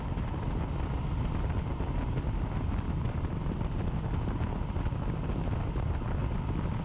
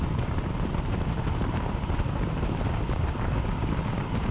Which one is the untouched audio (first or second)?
first